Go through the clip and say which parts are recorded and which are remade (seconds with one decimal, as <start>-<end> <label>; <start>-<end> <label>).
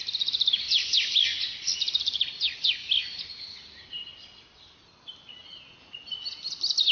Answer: 0.0-6.9 recorded